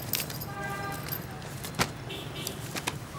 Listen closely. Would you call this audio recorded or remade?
recorded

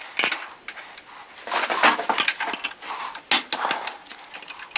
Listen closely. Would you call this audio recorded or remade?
recorded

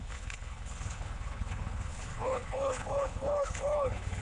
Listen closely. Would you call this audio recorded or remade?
remade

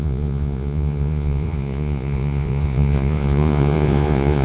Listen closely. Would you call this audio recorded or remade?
remade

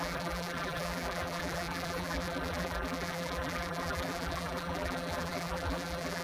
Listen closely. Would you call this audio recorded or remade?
remade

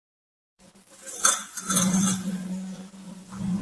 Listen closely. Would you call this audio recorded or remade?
remade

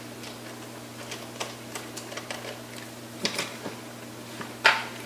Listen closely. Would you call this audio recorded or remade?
remade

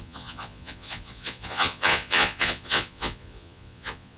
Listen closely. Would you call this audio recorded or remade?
remade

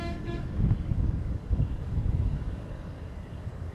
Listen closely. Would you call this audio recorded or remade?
remade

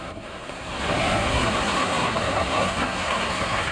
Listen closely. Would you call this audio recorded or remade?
remade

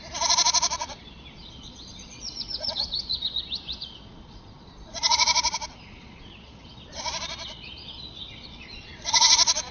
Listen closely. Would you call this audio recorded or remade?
remade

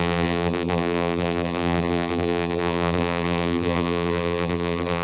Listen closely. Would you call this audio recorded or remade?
remade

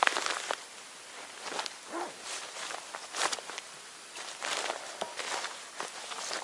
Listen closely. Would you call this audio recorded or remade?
recorded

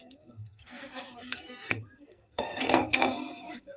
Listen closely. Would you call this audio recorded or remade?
remade